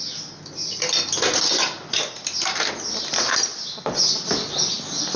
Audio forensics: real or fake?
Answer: real